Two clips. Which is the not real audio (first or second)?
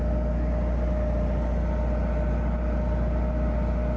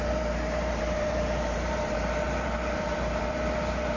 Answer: second